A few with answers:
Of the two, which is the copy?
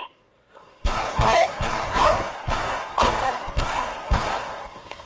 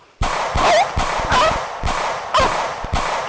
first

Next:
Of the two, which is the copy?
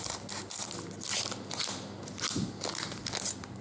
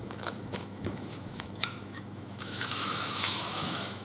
second